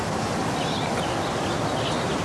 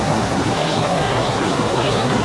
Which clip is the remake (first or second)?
second